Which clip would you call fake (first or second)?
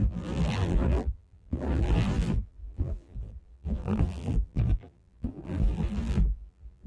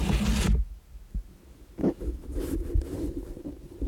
first